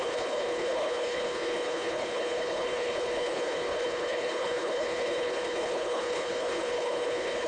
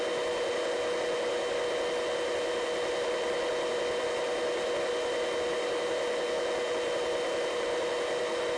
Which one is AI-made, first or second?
first